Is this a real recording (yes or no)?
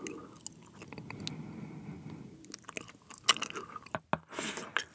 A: yes